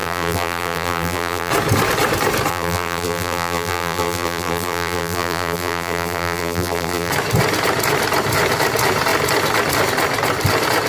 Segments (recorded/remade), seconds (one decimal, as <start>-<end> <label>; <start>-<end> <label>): 0.0-1.5 remade; 1.5-2.5 recorded; 2.5-7.1 remade; 7.1-10.9 recorded